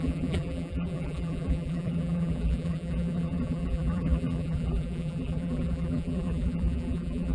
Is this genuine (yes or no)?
no